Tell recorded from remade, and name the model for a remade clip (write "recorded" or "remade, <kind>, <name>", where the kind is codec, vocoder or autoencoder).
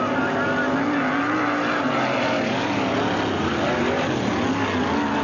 recorded